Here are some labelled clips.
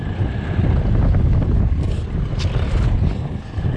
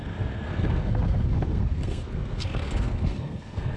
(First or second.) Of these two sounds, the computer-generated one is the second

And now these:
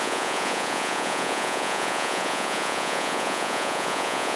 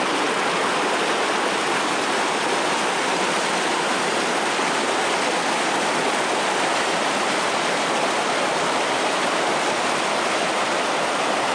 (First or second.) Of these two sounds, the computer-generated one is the first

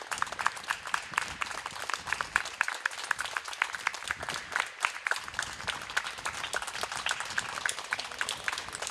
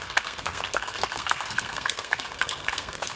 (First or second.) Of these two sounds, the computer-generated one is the second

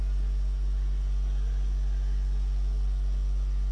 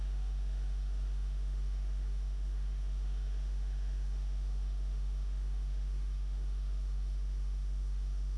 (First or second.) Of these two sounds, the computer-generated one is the second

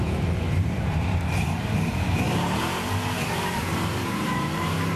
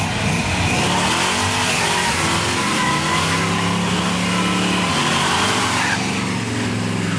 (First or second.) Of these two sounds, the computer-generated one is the first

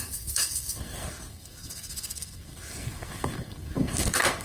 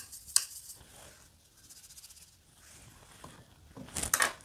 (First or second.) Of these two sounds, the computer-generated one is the first